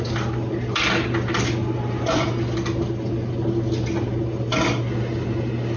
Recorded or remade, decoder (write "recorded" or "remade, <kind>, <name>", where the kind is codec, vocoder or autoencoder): recorded